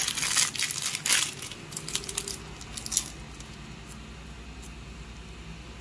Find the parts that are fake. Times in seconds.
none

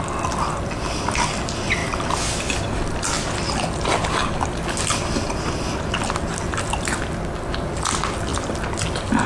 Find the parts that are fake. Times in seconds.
none

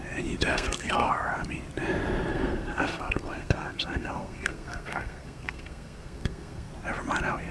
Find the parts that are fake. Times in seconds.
0.5-1.1 (codec, SNAC); 2.3-6.7

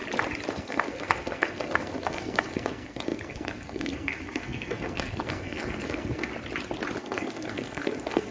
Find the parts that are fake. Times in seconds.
0.5-6.3 (codec, SNAC); 7.0-8.3

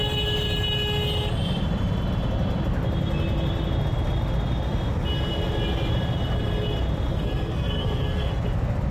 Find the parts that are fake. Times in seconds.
7.1-8.3 (codec, SNAC)

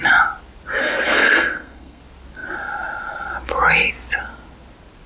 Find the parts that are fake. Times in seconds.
0.8-2.0 (codec, SNAC)

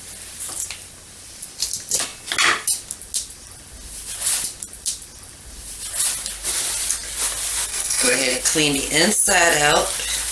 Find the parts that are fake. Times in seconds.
7.7-8.4 (codec, SNAC)